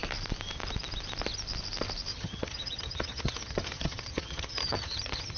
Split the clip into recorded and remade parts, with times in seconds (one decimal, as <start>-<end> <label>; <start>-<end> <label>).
0.0-2.1 recorded; 2.1-5.4 remade